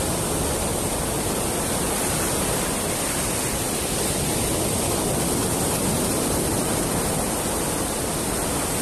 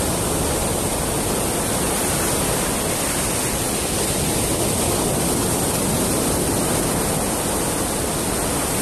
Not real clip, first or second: first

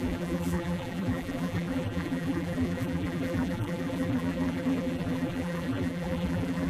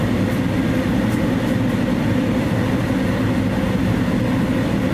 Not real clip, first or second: first